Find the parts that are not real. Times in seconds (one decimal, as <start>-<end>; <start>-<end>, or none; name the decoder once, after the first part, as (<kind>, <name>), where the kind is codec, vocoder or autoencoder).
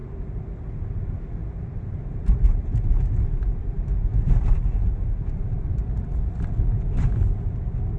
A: 1.4-6.2 (vocoder, BigVGAN v2)